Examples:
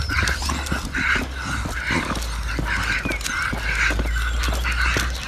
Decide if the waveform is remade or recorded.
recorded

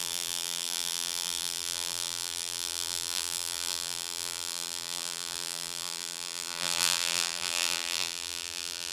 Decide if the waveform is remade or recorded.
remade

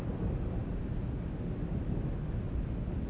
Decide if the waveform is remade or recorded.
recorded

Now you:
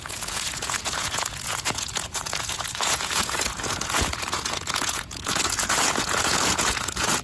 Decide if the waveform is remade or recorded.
remade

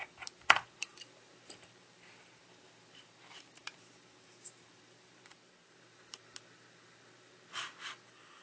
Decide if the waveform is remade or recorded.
remade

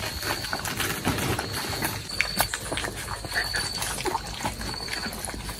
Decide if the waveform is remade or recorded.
recorded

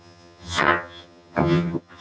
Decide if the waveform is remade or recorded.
remade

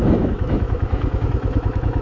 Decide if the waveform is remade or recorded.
remade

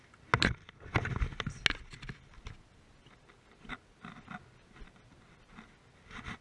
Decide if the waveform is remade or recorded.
recorded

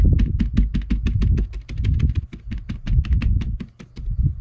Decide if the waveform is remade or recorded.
recorded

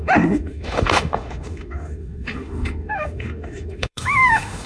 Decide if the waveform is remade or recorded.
remade